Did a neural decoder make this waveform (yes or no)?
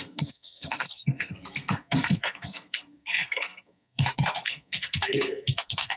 yes